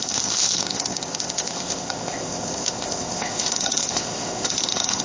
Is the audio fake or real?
fake